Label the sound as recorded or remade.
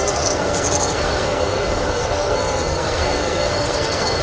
remade